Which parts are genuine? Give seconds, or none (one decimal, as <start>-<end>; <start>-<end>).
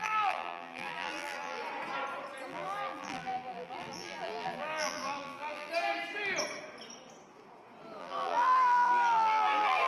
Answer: 1.6-2.5; 5.7-8.0